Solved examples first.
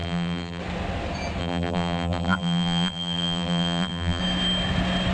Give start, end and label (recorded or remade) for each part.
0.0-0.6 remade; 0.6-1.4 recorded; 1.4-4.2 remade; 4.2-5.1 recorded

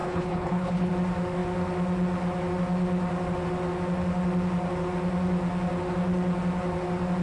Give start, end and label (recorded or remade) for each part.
0.0-0.9 remade; 0.9-7.2 recorded